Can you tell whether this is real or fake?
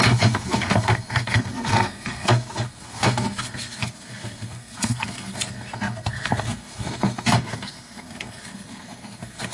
fake